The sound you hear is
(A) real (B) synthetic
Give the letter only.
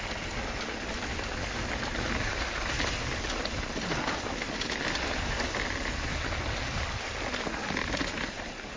A